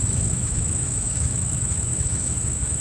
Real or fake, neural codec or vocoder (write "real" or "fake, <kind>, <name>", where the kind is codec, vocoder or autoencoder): fake, autoencoder, DAC-VAE